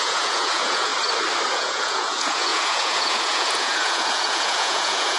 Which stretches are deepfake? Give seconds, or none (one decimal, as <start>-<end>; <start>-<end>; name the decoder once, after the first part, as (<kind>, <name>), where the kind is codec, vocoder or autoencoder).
0.0-0.9 (vocoder, Vocos); 1.5-5.2